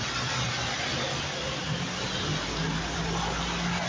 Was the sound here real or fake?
real